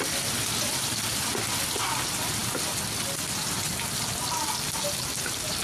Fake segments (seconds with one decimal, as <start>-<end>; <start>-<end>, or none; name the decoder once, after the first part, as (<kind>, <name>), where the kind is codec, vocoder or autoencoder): none